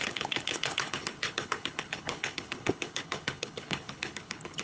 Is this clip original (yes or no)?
no